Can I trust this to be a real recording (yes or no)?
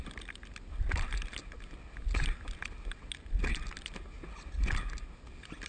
yes